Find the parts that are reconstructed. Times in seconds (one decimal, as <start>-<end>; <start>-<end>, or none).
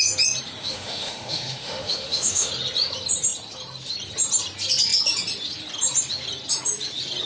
0.6-2.5